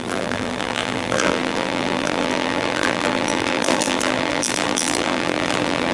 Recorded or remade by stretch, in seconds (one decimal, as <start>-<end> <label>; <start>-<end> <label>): 0.0-5.9 remade